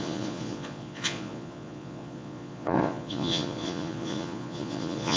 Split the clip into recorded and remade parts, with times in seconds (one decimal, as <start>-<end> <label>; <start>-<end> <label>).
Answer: 0.0-5.2 remade